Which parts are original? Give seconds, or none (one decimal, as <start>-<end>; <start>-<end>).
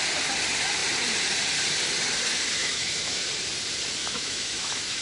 0.0-2.6; 3.2-4.0